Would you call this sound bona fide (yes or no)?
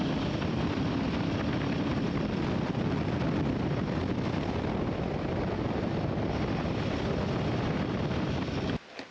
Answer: yes